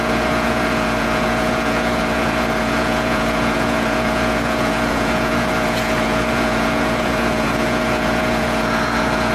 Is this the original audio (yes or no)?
no